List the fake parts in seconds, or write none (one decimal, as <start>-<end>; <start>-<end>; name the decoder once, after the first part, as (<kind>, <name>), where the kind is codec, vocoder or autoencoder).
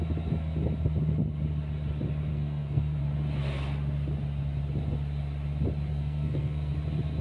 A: 2.3-3.0 (codec, SNAC); 5.9-6.7